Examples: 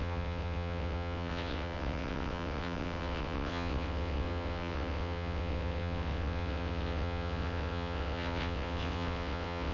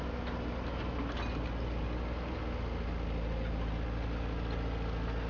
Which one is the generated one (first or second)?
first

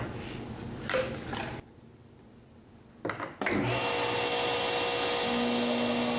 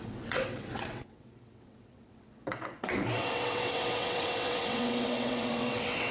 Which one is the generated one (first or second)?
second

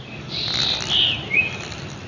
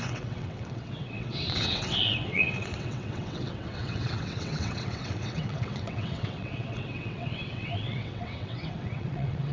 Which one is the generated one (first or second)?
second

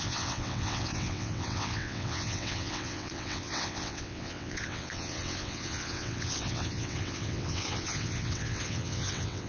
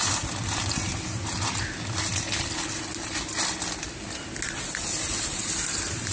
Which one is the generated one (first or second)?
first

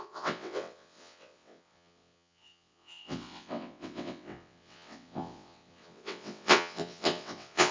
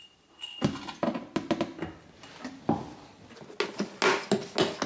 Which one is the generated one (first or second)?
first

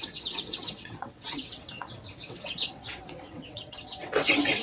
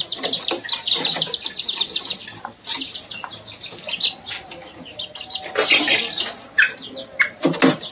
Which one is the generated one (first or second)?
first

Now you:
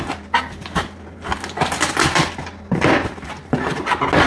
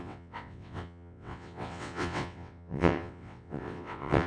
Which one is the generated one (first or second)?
second